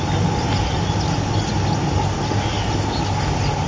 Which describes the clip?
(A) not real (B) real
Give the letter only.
B